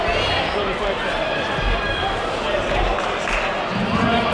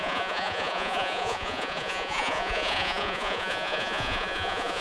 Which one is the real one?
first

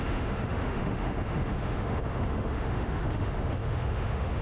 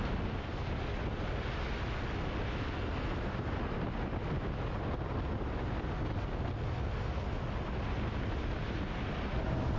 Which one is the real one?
second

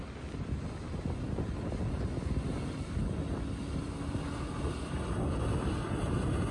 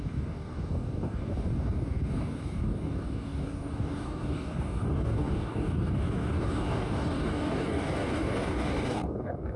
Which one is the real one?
first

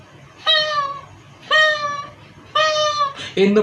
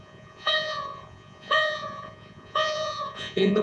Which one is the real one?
first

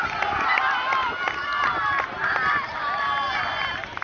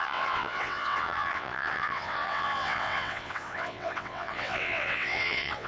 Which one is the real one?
first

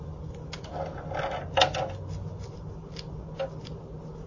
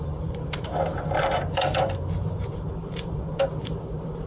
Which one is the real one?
first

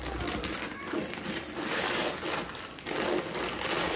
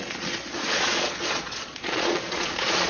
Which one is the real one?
first